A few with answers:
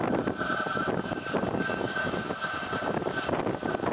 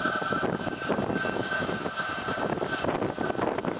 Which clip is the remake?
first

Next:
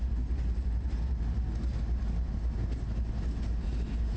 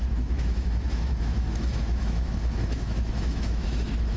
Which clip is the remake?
second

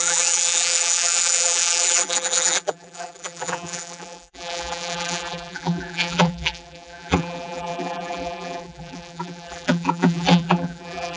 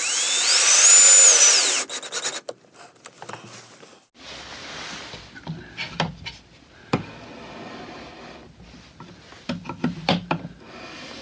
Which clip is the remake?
first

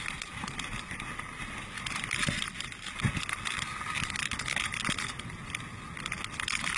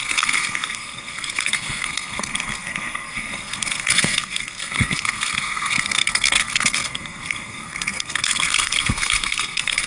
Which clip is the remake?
second